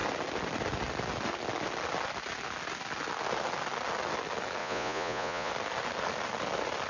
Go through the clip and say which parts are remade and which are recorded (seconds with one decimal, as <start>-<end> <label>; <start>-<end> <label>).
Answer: 0.0-4.6 recorded; 4.6-5.5 remade; 5.5-6.9 recorded